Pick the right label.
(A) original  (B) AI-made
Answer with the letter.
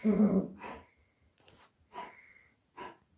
B